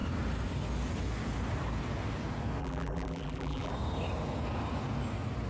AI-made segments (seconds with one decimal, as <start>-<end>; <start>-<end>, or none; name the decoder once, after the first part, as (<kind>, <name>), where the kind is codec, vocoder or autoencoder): 2.6-3.7 (vocoder, BigVGAN v2)